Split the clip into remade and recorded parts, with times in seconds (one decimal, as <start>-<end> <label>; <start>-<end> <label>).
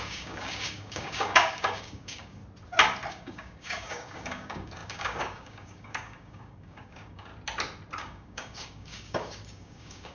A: 0.0-2.4 remade; 2.4-3.1 recorded; 3.1-7.3 remade; 7.3-8.0 recorded; 8.0-10.1 remade